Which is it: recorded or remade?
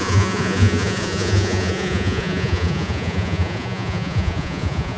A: remade